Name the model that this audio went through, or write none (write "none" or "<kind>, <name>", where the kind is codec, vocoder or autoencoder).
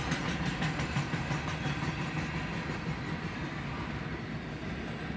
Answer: none